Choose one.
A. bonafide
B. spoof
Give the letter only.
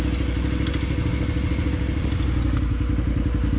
A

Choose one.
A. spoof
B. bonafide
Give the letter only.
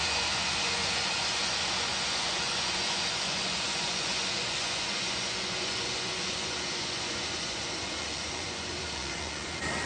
A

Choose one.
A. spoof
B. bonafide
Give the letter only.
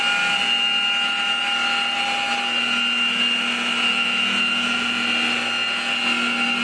B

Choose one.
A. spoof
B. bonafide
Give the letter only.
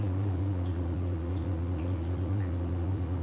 A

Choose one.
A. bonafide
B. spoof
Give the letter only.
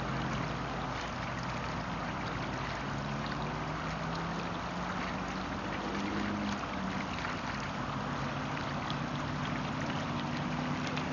A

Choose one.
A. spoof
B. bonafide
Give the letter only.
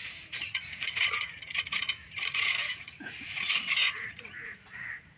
A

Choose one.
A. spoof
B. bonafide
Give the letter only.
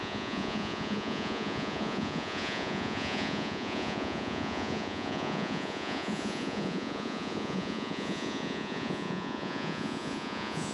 A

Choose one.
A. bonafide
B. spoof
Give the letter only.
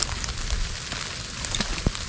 A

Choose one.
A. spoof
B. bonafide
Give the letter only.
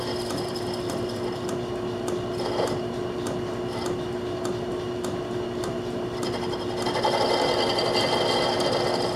B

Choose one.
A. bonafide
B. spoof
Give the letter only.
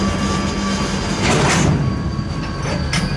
A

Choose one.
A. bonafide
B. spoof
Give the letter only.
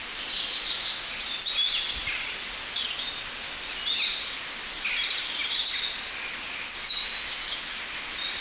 A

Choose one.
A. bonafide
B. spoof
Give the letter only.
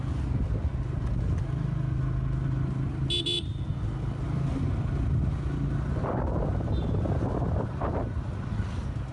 A